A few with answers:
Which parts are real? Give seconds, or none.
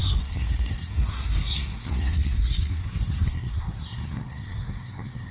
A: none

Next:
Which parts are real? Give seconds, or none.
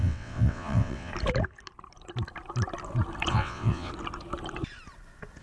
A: 1.1-3.3; 3.9-5.4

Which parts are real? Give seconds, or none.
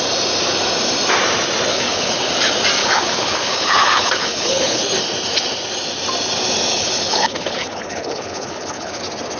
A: 0.0-1.7; 2.3-2.8; 4.8-6.7; 9.0-9.4